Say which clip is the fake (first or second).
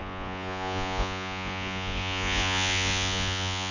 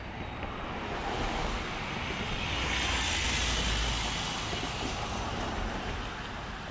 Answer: first